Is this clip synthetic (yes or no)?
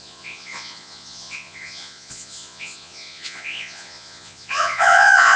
yes